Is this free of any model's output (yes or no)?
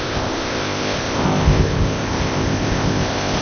no